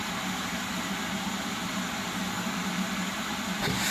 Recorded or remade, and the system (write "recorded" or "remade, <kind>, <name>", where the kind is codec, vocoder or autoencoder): remade, vocoder, BigVGAN v2